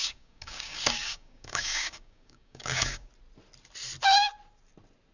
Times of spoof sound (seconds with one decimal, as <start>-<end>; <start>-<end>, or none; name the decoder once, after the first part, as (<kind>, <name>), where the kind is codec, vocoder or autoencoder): 0.0-3.1 (codec, DAC)